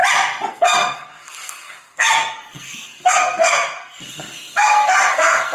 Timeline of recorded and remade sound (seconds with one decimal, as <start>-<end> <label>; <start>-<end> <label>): 0.0-0.5 recorded; 0.5-5.5 remade